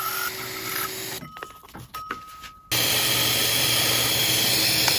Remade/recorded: recorded